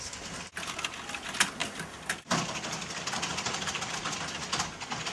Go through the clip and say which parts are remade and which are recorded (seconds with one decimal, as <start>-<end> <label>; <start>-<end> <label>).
0.0-5.1 recorded